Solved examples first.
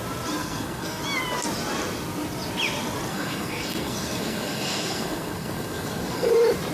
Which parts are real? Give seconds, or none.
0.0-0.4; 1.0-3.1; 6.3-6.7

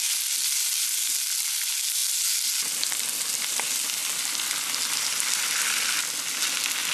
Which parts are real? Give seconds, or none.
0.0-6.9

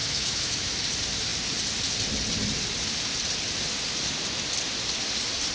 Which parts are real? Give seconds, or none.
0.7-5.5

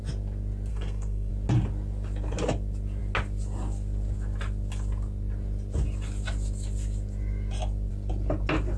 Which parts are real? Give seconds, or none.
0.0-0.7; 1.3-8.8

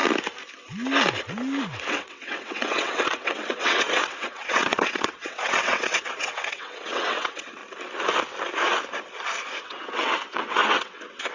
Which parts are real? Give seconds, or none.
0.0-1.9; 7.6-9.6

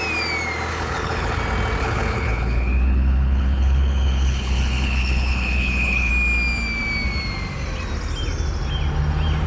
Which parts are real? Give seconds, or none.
0.0-0.7; 1.4-1.8; 6.1-9.5

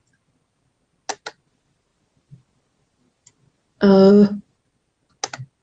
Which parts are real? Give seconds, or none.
0.0-5.6